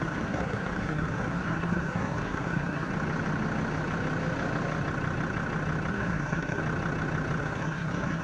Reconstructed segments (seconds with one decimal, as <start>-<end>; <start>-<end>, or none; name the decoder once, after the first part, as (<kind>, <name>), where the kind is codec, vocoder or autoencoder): 0.0-2.9 (codec, SNAC); 5.9-6.6; 7.4-8.2